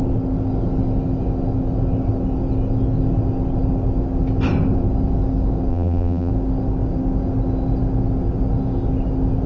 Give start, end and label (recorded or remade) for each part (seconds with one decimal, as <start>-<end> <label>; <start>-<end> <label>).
0.0-5.7 recorded; 5.7-6.3 remade; 6.3-9.5 recorded